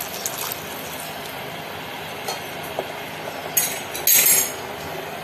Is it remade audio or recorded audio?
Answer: recorded